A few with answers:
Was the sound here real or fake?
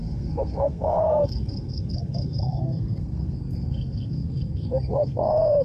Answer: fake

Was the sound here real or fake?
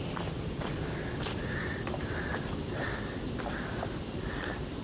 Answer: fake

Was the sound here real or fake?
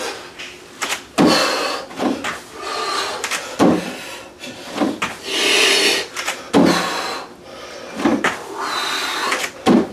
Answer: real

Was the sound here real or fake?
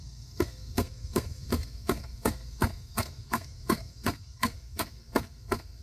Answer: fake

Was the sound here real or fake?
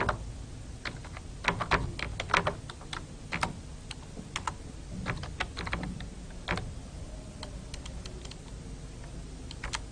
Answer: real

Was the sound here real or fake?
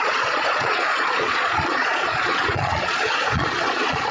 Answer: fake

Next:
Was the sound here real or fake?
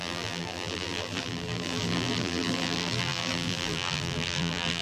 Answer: fake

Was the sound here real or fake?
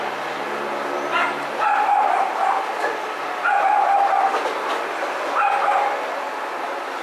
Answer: real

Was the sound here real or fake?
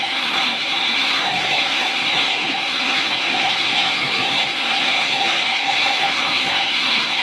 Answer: fake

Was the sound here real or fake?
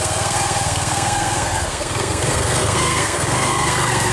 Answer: fake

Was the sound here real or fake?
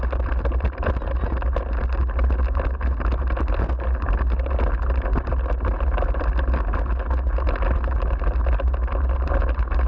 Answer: real